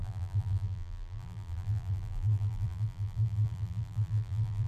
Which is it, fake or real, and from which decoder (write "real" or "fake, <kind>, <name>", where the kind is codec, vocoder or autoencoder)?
fake, vocoder, BigVGAN v2